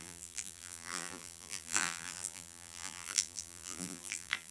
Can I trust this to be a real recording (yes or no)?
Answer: no